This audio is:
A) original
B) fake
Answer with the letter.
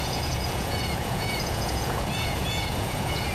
B